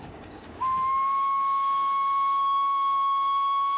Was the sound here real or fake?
fake